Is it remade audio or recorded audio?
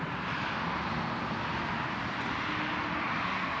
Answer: recorded